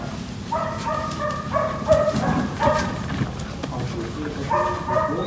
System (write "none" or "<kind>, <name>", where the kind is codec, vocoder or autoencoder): none